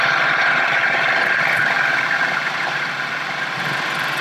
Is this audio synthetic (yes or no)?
yes